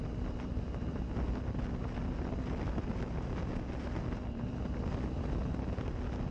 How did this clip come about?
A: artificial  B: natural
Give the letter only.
B